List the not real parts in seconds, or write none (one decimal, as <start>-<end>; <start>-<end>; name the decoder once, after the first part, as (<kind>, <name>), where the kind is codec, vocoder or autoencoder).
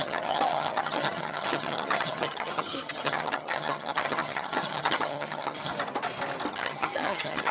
0.0-5.7 (vocoder, HiFi-GAN); 6.5-7.5